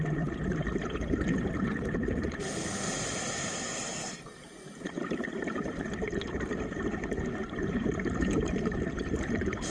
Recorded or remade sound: remade